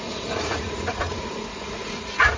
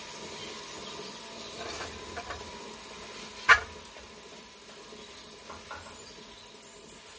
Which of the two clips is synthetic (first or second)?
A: first